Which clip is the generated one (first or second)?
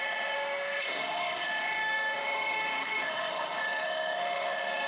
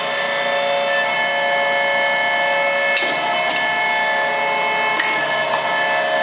first